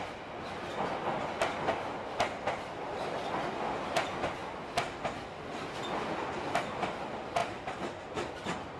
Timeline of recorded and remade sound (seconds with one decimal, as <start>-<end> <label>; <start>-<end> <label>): 0.0-8.8 recorded